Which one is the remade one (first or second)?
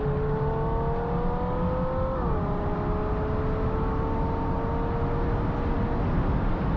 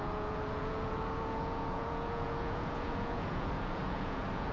second